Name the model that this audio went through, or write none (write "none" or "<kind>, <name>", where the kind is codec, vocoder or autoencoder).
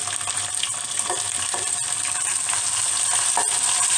none